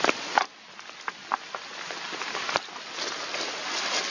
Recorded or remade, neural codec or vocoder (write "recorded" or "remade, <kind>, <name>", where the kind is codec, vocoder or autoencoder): recorded